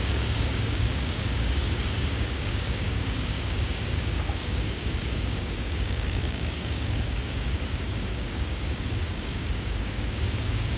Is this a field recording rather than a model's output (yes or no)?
no